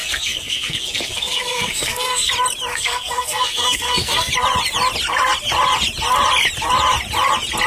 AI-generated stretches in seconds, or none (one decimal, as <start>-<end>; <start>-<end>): 0.0-2.3; 2.7-4.3